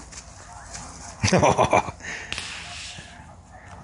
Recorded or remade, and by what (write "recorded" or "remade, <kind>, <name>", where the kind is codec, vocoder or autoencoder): recorded